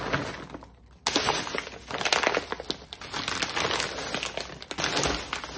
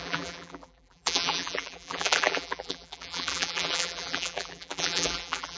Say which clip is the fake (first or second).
second